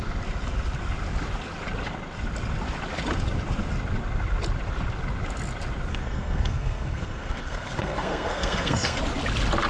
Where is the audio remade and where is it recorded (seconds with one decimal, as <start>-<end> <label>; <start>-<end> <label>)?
0.0-5.9 recorded; 5.9-9.0 remade; 9.0-9.7 recorded